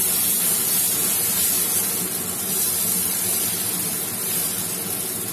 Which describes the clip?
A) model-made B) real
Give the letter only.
A